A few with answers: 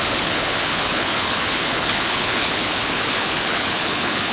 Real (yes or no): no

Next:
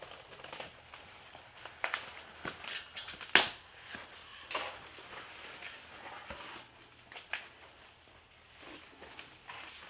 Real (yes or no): yes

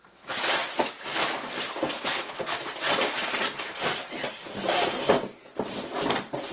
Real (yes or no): yes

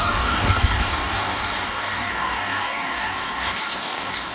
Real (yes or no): no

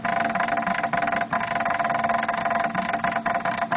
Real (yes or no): yes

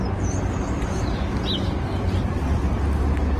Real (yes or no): yes